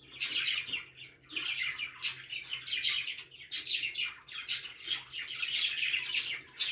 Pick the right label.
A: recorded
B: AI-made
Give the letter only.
A